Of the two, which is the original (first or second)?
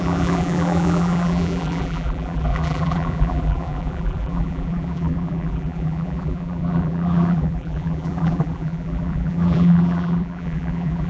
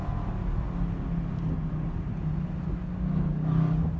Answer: second